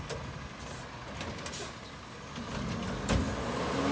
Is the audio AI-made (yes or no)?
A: no